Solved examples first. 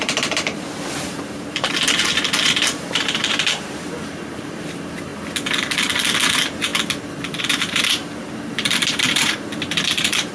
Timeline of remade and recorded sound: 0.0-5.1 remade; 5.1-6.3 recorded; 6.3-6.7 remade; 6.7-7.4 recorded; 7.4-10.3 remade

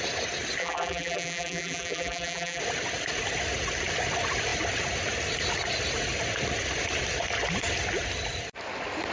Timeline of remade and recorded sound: 0.0-0.6 recorded; 0.6-2.6 remade; 2.6-9.1 recorded

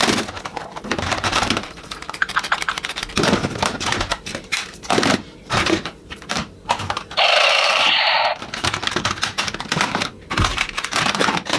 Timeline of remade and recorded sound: 0.0-0.6 recorded; 0.6-2.7 remade; 2.7-4.1 recorded; 4.1-9.0 remade; 9.0-10.5 recorded; 10.5-11.6 remade

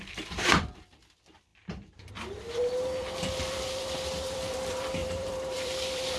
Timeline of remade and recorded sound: 0.0-6.2 remade

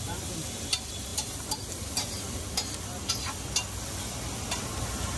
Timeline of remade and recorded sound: 0.0-5.2 recorded

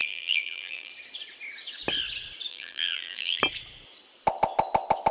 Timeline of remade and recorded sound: 0.0-0.9 remade; 0.9-2.5 recorded; 2.5-3.4 remade; 3.4-5.1 recorded